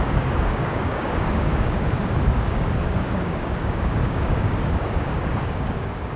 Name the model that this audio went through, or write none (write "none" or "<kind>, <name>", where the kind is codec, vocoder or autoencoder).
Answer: codec, DAC